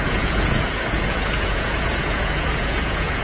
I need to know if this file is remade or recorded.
remade